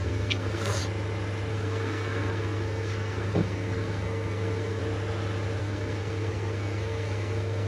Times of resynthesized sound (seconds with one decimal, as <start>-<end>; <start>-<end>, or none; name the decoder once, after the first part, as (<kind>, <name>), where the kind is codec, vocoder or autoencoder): 0.0-0.8 (codec, SNAC); 1.5-4.8; 5.6-7.7